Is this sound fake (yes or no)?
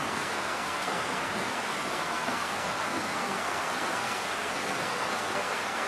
yes